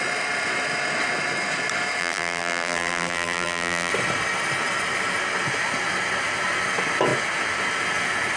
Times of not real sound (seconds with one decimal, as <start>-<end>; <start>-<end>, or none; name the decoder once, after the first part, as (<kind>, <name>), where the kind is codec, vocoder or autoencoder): 2.0-3.9 (vocoder, BigVGAN v2)